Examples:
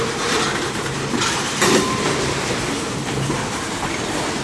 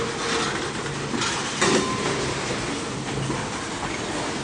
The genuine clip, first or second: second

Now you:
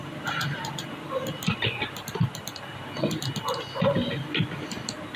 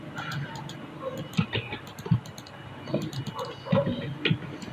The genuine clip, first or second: second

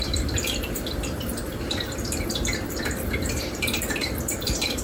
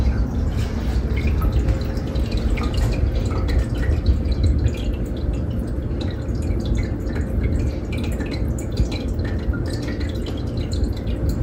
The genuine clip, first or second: second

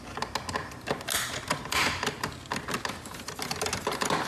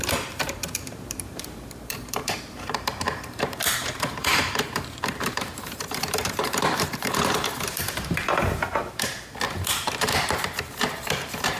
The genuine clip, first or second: first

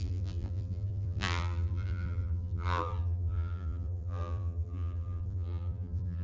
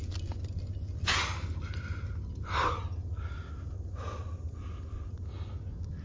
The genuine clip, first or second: second